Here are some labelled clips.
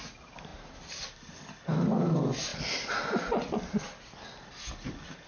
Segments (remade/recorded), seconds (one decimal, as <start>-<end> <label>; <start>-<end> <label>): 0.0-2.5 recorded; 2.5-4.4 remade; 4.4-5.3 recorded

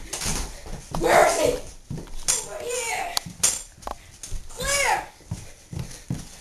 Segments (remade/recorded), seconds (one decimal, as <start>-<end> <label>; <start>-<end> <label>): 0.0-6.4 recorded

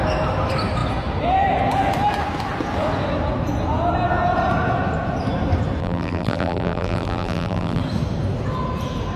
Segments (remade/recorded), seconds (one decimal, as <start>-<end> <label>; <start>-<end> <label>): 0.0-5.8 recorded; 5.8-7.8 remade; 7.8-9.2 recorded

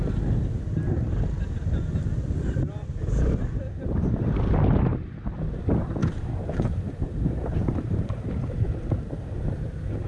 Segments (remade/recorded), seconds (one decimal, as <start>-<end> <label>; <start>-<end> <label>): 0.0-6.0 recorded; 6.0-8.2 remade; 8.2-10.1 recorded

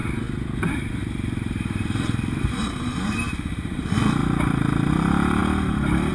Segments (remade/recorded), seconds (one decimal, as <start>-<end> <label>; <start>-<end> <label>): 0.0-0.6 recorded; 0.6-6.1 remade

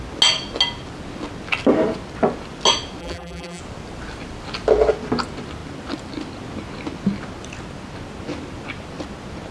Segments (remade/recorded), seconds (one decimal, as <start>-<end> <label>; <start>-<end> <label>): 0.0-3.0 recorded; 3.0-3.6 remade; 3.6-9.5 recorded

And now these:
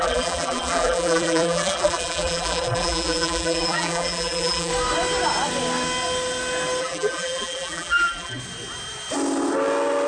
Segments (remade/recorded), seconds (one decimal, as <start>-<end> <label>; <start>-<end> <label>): 0.0-4.7 remade; 4.7-6.8 recorded; 6.8-8.4 remade; 8.4-10.1 recorded